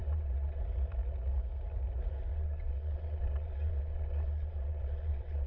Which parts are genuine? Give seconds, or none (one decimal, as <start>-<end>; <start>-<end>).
0.6-2.3